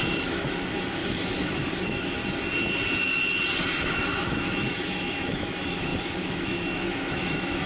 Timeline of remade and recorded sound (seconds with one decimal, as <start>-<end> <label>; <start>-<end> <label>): 0.0-2.2 remade; 2.2-3.8 recorded; 3.8-7.7 remade